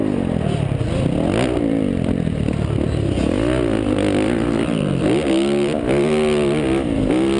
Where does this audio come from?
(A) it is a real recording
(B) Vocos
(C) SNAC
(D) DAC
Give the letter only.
A